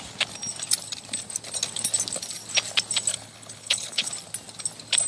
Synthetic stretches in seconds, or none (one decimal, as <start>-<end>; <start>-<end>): 3.1-4.1